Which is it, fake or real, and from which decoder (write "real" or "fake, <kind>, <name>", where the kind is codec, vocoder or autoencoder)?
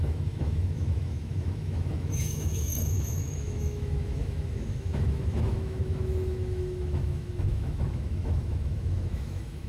fake, autoencoder, DAC-VAE